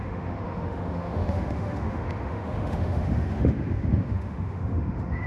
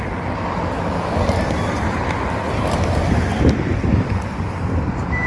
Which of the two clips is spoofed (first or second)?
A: first